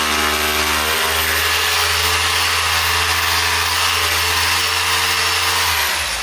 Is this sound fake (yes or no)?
no